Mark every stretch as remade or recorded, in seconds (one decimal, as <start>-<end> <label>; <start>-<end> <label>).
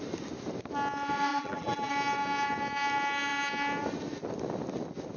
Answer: 0.0-1.3 recorded; 1.3-1.9 remade; 1.9-5.2 recorded